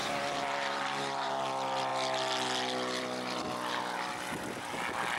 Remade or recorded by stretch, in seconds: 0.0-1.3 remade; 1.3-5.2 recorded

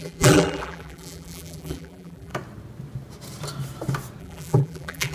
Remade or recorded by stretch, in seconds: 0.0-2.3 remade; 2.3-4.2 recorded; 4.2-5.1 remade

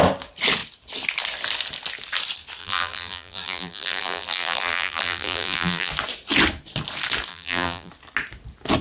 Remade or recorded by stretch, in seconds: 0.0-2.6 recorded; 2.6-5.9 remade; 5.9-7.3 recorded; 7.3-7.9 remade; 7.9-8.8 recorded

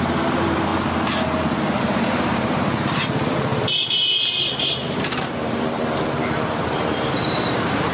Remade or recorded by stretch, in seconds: 0.0-0.7 remade; 0.7-1.8 recorded; 1.8-7.9 remade

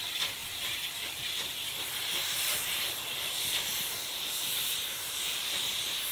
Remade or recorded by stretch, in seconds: 0.0-0.4 recorded; 0.4-1.3 remade; 1.3-2.0 recorded; 2.0-5.6 remade; 5.6-6.1 recorded

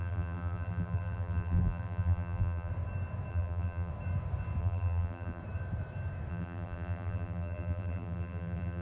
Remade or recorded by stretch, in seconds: 0.0-2.7 remade; 2.7-3.3 recorded; 3.3-3.9 remade; 3.9-4.6 recorded; 4.6-5.4 remade; 5.4-6.3 recorded; 6.3-8.8 remade

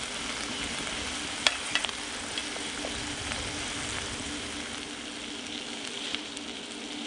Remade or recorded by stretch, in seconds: 0.0-7.1 recorded

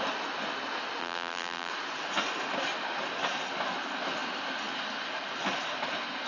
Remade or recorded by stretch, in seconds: 0.0-1.0 recorded; 1.0-1.7 remade; 1.7-6.3 recorded